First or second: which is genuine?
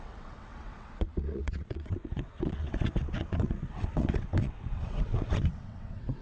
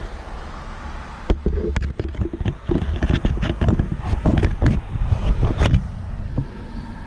second